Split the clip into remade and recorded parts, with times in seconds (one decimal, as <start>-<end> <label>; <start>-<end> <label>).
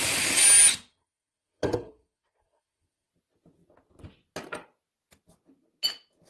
0.0-0.9 recorded; 0.9-3.1 remade; 3.1-6.3 recorded